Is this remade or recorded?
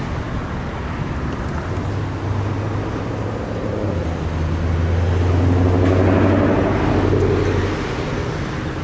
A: recorded